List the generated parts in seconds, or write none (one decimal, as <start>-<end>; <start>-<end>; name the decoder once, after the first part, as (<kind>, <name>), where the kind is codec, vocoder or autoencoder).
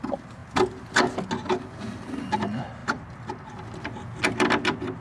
none